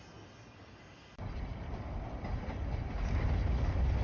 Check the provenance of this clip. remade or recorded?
recorded